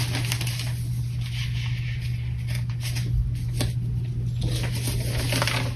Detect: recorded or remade recorded